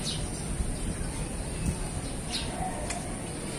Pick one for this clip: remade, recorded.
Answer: recorded